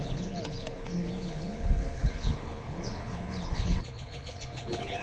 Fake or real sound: fake